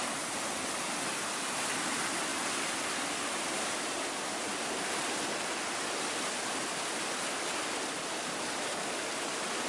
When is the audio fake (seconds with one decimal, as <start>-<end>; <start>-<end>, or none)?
2.3-5.6